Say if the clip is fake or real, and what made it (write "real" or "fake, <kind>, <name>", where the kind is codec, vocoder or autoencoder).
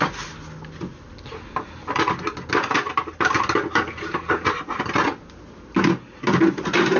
real